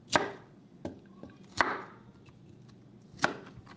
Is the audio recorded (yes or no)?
yes